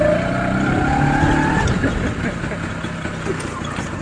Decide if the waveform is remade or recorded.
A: recorded